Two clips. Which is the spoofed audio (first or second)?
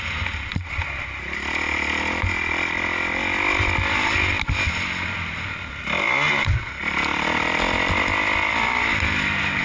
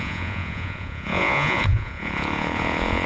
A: second